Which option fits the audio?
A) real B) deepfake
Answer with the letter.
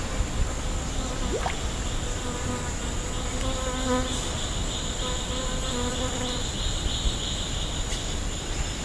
A